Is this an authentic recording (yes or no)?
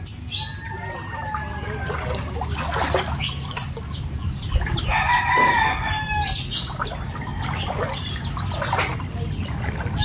yes